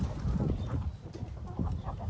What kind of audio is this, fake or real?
real